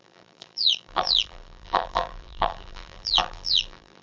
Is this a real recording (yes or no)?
no